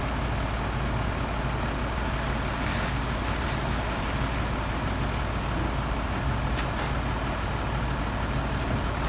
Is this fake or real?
real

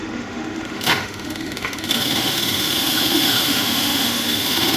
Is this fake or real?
fake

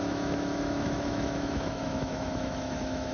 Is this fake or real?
fake